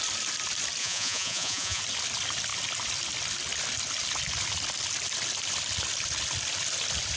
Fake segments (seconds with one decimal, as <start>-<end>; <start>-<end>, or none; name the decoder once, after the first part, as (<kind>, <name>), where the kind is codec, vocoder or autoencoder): 0.8-1.8 (vocoder, Vocos)